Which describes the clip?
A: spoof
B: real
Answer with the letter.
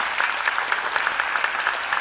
B